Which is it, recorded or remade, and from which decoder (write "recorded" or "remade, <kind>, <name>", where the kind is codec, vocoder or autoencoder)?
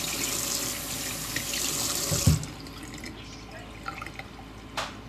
recorded